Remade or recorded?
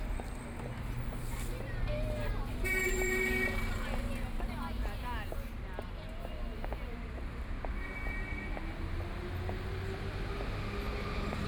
recorded